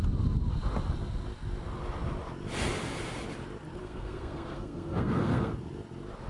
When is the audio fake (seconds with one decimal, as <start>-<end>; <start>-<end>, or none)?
3.8-5.5